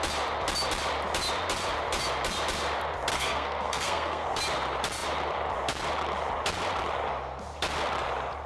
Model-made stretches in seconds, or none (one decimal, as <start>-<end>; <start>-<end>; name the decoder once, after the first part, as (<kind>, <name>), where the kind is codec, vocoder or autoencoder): 3.1-4.4 (codec, SNAC)